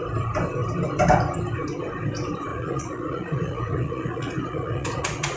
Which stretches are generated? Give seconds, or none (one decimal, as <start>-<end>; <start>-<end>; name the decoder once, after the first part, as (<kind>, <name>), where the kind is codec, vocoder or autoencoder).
2.5-5.4 (vocoder, Vocos)